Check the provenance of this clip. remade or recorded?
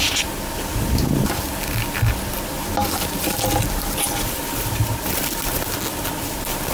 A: recorded